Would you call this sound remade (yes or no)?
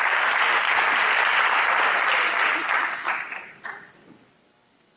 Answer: no